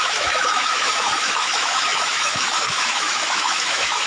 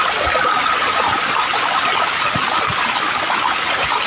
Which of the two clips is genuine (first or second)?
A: second